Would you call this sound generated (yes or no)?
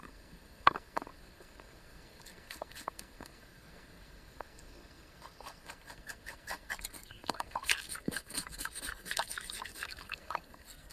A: yes